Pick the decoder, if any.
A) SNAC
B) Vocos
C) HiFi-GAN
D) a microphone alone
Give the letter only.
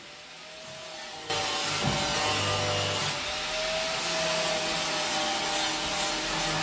D